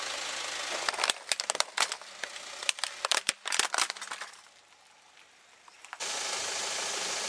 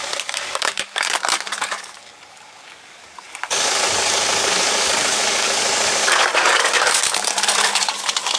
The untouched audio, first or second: first